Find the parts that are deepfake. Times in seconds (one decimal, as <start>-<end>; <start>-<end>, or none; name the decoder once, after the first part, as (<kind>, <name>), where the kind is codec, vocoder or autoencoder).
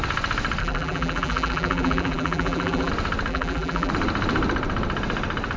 0.6-2.9 (vocoder, BigVGAN v2); 3.3-3.9